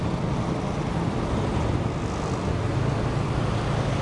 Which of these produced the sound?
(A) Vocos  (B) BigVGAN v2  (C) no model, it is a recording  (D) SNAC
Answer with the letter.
C